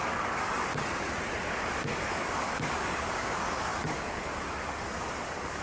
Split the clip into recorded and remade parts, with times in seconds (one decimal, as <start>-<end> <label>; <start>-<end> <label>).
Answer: 0.0-0.7 remade; 0.7-1.5 recorded; 1.5-5.6 remade